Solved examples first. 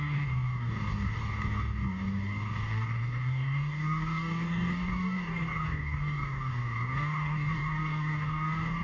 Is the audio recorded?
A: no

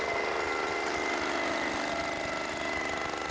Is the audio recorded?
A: yes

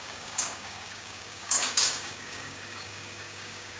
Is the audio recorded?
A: no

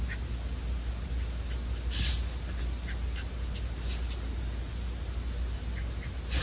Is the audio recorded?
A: yes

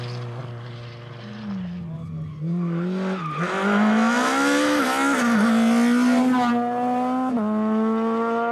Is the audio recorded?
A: yes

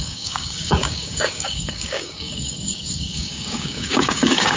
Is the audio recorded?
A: no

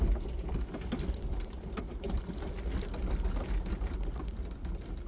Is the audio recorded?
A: yes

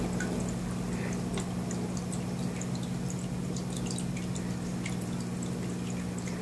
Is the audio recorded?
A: yes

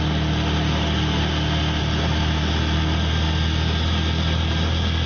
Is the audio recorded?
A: yes